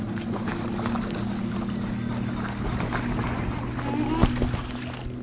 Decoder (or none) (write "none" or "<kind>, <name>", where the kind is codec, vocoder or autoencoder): none